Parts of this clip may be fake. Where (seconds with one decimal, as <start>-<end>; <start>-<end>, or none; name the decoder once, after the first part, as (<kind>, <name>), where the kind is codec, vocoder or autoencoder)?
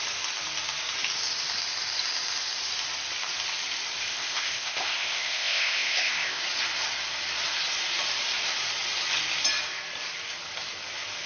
4.0-6.4 (codec, ZipCodec)